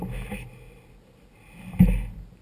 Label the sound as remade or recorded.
recorded